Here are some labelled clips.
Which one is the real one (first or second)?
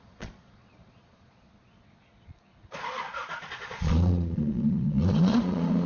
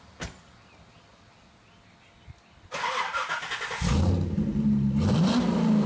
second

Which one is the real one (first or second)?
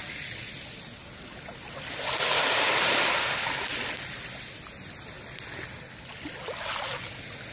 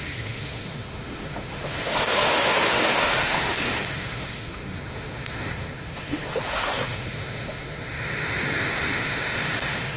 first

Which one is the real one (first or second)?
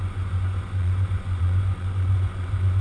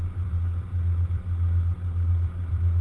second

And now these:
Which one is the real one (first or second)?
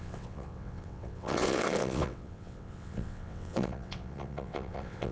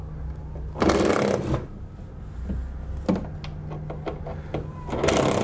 second